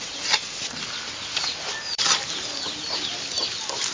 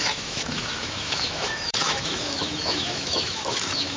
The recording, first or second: first